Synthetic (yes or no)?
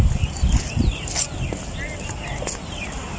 no